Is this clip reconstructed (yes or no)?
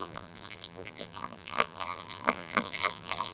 yes